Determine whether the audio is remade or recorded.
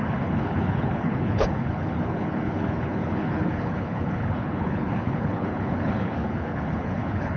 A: remade